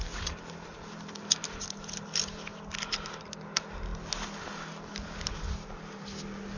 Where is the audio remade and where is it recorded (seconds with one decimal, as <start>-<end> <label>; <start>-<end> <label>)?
0.0-6.6 recorded